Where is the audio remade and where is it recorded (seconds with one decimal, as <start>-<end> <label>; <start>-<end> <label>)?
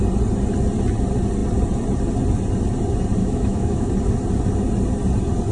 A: 0.0-3.2 recorded; 3.2-3.9 remade; 3.9-5.5 recorded